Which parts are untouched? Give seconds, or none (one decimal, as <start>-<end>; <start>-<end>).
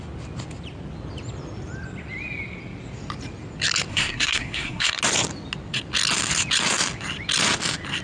0.0-3.9; 5.0-8.0